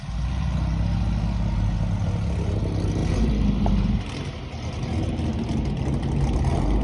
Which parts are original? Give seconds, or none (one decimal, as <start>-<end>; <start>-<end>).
0.0-6.8